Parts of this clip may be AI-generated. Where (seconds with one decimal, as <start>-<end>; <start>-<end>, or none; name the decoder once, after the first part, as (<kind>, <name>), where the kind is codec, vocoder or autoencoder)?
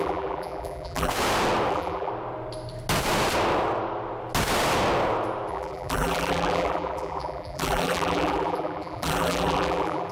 0.0-1.1 (vocoder, BigVGAN v2); 1.7-2.1; 5.5-10.1